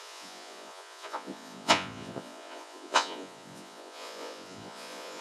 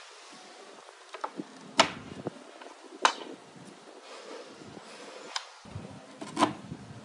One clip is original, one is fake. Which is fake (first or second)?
first